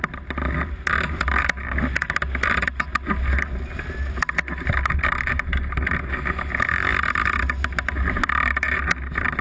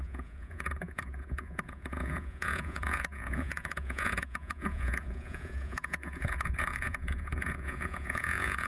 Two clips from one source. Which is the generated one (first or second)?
second